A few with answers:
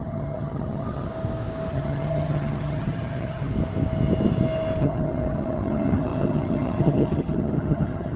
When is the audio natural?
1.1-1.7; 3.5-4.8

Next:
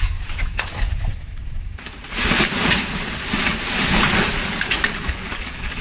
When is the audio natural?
0.9-4.4

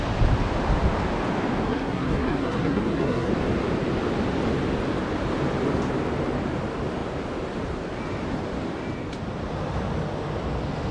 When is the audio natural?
0.0-1.7; 3.3-10.9

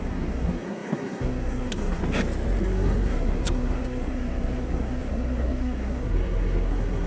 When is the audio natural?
2.0-2.6

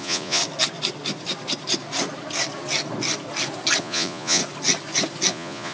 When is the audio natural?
0.4-3.8; 4.4-5.3

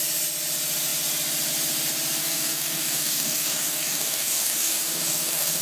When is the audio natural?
0.0-2.2

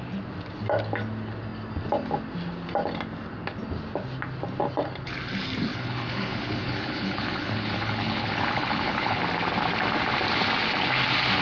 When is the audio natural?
0.0-5.7; 9.2-11.4

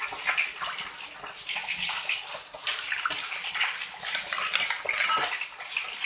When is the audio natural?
0.0-6.1